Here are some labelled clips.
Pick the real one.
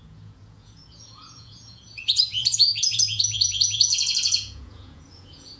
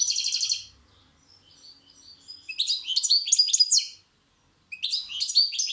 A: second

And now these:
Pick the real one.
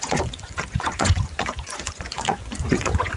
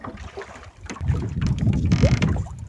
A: second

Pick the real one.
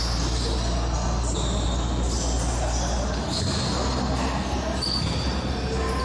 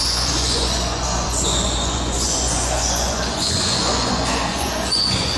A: first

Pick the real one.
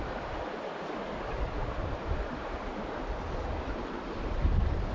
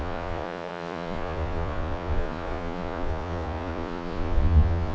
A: first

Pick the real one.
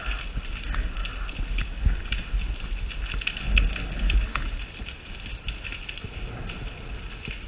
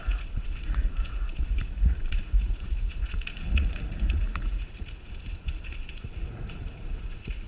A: first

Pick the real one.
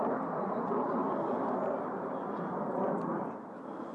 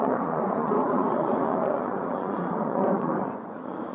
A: first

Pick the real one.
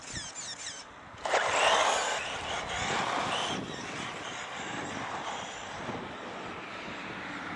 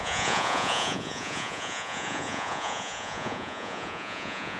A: first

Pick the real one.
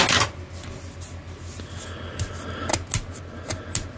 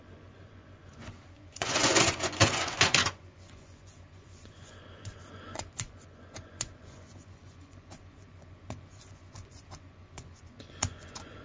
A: first